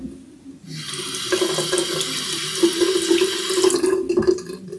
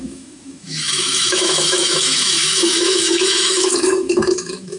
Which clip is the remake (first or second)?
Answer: second